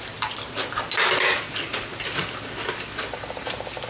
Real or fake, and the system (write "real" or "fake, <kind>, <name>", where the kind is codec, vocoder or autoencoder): real